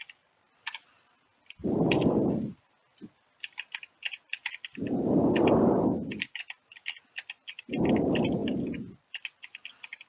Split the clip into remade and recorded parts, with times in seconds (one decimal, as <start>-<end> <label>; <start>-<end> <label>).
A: 0.0-10.1 recorded